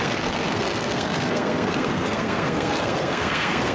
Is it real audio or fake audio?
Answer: fake